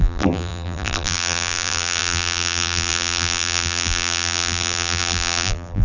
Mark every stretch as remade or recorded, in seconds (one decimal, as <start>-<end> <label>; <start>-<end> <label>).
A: 0.0-5.8 remade